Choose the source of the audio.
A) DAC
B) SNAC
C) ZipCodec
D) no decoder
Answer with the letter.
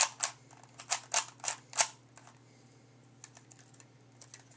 D